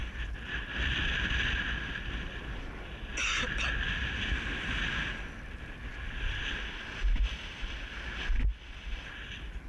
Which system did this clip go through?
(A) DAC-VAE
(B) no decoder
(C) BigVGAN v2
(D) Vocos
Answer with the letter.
B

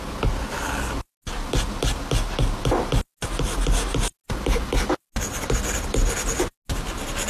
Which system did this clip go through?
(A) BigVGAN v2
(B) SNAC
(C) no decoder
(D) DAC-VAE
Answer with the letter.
C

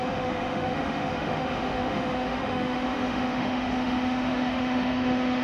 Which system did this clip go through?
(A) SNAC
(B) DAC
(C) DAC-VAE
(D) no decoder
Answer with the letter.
C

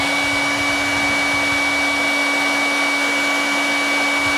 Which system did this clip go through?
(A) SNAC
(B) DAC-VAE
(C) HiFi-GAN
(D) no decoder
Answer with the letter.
D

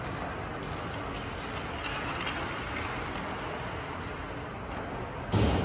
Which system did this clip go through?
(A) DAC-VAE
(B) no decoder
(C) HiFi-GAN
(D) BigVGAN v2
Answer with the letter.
B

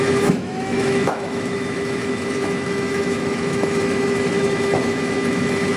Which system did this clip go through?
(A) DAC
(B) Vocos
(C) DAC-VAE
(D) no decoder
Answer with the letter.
C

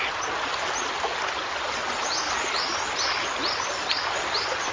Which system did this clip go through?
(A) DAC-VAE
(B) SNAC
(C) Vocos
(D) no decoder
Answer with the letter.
D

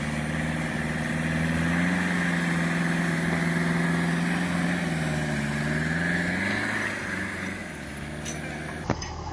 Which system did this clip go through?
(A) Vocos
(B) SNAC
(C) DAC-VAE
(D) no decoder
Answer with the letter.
D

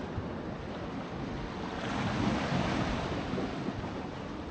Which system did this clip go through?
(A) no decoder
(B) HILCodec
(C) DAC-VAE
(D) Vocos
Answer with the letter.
A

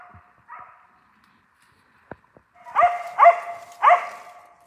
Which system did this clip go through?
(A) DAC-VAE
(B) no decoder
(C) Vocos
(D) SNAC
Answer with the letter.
B